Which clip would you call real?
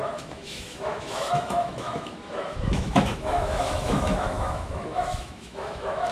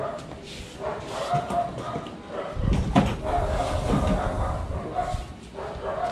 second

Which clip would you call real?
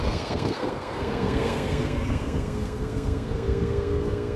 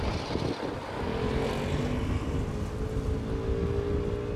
second